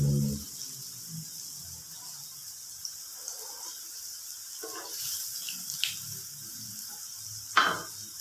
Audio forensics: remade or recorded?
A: recorded